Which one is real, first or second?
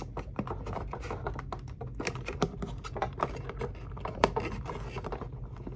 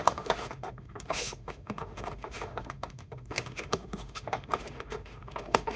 first